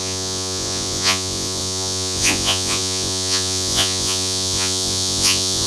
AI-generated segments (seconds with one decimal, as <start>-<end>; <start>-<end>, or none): 0.0-5.7